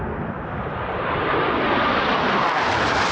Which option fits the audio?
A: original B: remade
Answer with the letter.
B